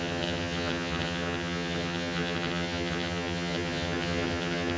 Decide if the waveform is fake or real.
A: fake